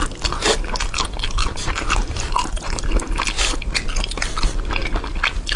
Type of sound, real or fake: real